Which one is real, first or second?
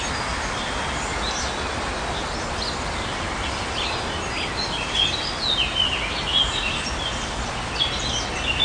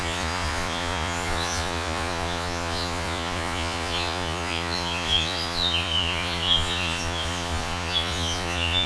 first